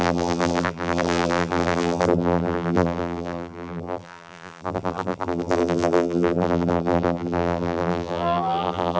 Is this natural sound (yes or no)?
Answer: no